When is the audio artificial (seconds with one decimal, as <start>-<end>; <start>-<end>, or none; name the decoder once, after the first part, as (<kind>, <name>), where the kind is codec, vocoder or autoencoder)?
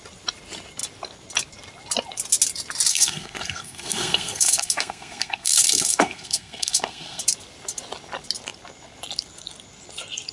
2.9-7.2 (codec, SNAC)